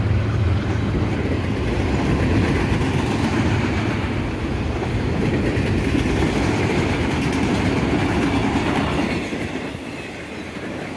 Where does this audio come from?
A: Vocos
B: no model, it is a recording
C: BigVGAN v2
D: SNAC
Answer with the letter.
B